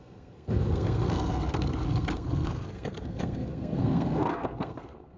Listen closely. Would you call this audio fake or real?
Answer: fake